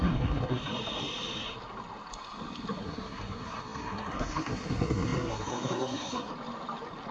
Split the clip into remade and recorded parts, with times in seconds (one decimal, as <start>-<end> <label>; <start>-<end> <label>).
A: 0.0-0.7 remade; 0.7-2.8 recorded; 2.8-6.3 remade; 6.3-7.1 recorded